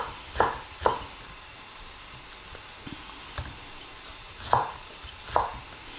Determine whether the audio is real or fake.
real